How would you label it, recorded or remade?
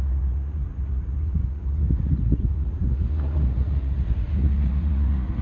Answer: remade